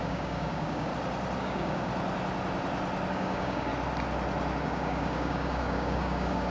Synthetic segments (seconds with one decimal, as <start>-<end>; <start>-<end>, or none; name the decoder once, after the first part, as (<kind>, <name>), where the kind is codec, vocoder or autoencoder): 0.0-0.9 (codec, DAC); 1.4-1.9; 3.1-3.7; 4.6-6.5